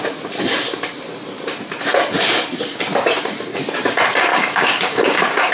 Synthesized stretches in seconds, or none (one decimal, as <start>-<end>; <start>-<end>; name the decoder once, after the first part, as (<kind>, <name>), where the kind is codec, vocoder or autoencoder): 4.3-5.5 (codec, DAC)